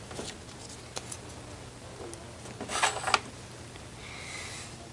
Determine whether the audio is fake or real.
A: real